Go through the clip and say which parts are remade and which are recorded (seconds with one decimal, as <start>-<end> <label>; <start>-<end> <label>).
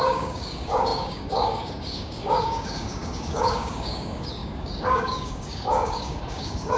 0.0-6.8 remade